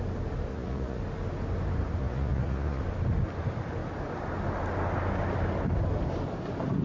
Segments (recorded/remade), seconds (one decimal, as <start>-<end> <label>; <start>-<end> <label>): 0.0-0.5 recorded; 0.5-1.0 remade; 1.0-2.0 recorded; 2.0-2.8 remade; 2.8-6.8 recorded